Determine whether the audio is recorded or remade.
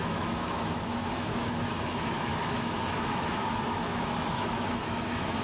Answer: remade